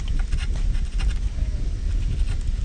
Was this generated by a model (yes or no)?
no